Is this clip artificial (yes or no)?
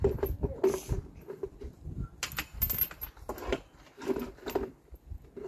no